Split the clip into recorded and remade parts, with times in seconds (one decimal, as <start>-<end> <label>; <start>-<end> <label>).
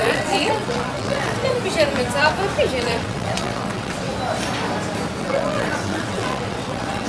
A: 0.0-1.4 remade; 1.4-2.8 recorded; 2.8-4.1 remade; 4.1-5.2 recorded; 5.2-7.1 remade